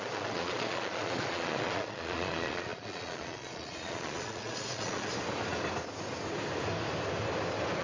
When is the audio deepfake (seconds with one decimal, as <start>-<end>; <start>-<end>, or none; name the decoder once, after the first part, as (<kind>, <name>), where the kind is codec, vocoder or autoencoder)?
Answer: 0.0-5.1 (vocoder, Vocos)